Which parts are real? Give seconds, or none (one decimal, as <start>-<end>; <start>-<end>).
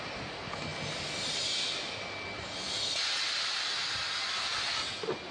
0.0-5.3